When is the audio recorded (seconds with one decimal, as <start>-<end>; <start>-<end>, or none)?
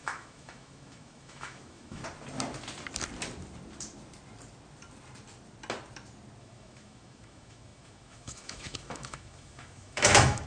2.0-6.4